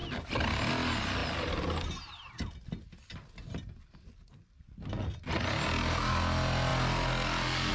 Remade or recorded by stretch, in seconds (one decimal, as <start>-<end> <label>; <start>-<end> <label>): 0.0-7.7 recorded